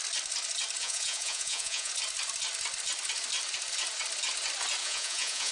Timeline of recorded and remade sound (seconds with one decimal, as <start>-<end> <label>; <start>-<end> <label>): 0.0-0.8 recorded; 0.8-1.9 remade; 1.9-4.8 recorded; 4.8-5.5 remade